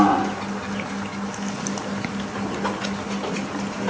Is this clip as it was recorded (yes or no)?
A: yes